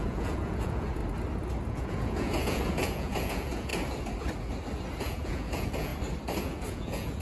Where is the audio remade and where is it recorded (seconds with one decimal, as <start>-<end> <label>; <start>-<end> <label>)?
0.0-1.0 remade; 1.0-1.7 recorded; 1.7-3.7 remade; 3.7-5.0 recorded; 5.0-5.9 remade; 5.9-6.4 recorded; 6.4-7.2 remade